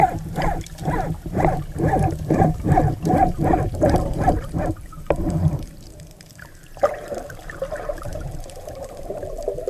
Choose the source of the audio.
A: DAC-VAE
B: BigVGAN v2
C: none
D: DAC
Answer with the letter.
B